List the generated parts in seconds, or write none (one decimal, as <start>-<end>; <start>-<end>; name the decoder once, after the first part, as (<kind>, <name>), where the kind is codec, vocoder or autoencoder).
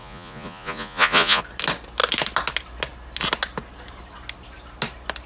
0.0-1.4 (vocoder, Vocos)